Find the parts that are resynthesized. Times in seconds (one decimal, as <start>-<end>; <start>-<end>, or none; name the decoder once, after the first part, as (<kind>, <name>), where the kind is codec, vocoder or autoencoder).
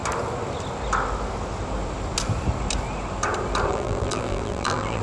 3.7-5.0 (vocoder, BigVGAN v2)